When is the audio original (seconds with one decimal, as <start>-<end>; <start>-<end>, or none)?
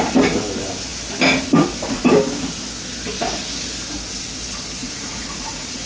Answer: 0.0-4.8